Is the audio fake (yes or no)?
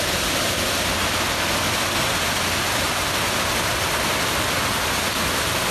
no